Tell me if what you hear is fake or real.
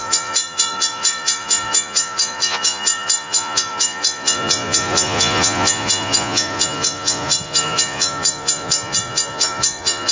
fake